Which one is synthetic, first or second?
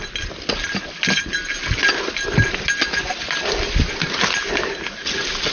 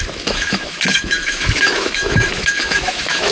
second